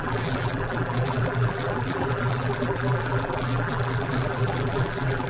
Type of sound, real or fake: fake